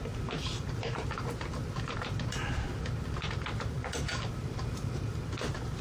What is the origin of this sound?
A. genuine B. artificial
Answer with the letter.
B